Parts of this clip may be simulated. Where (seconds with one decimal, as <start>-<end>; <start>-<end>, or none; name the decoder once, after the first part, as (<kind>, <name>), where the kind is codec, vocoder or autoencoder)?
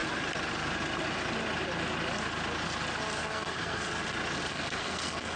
3.2-3.9 (codec, SNAC); 4.5-5.4